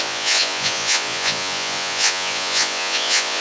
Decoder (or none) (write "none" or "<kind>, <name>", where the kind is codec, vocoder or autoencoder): vocoder, Vocos